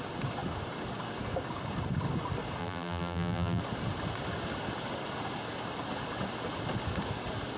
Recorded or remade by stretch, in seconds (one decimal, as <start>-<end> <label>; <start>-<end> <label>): 0.0-2.6 recorded; 2.6-3.6 remade; 3.6-7.6 recorded